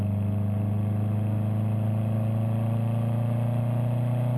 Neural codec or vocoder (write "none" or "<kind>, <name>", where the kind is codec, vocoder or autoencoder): none